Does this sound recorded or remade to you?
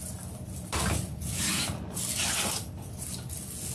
recorded